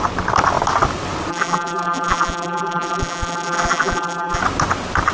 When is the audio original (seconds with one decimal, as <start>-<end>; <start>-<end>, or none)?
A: 0.0-1.3; 4.4-5.1